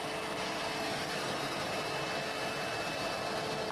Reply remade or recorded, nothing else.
recorded